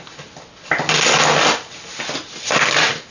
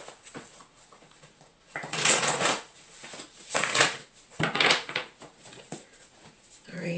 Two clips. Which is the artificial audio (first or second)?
second